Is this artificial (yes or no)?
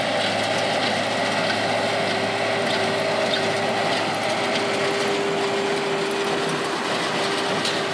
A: no